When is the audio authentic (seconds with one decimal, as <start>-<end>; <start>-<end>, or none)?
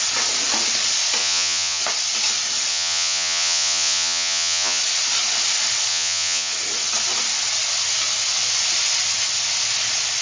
0.0-1.2; 1.8-2.7; 4.8-5.9; 6.5-10.2